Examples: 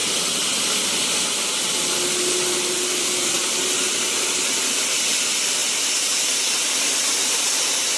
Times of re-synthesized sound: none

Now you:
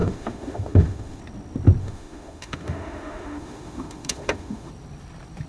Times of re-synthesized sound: 0.0-1.2; 1.8-4.7

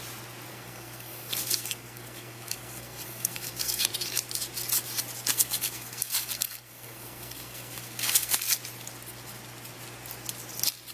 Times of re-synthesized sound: 0.5-3.9; 5.3-8.4